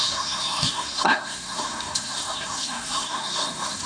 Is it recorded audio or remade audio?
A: remade